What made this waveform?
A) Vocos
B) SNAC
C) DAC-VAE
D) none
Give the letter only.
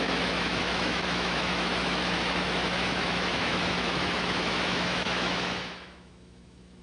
C